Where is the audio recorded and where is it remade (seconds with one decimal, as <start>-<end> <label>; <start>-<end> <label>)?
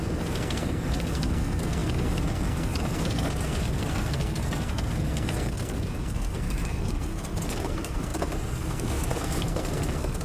0.0-10.2 remade